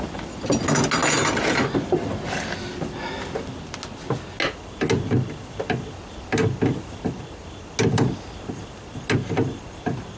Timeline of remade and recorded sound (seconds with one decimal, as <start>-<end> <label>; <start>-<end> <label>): 0.0-10.2 recorded